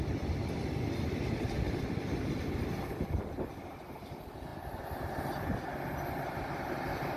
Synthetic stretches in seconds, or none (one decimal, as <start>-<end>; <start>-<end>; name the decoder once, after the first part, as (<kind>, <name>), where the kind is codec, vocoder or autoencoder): none